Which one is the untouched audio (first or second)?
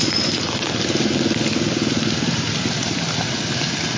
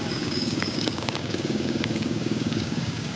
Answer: first